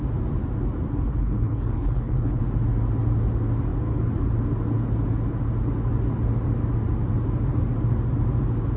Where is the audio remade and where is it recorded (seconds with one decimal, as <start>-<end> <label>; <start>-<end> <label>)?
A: 0.0-1.1 recorded; 1.1-2.4 remade; 2.4-8.8 recorded